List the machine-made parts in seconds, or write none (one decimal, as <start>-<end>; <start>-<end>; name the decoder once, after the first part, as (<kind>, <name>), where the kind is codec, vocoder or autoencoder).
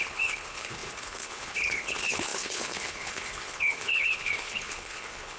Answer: 0.0-5.4 (codec, HILCodec)